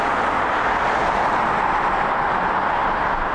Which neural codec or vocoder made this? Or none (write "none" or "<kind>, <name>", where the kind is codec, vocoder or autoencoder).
none